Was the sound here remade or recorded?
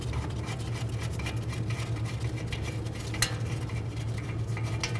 recorded